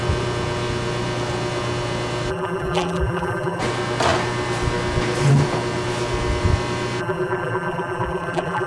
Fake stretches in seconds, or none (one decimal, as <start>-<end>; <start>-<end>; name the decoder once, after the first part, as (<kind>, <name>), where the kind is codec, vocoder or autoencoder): 2.3-3.6 (vocoder, BigVGAN v2); 7.0-8.7